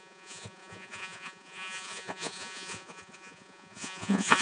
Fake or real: fake